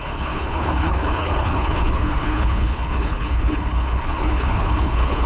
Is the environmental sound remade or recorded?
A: remade